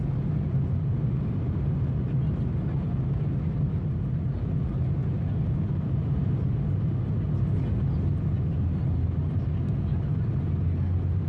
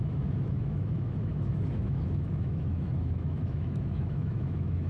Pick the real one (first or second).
first